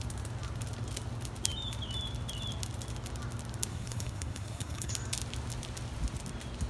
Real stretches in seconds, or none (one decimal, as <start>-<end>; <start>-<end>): 0.0-3.7; 4.9-6.7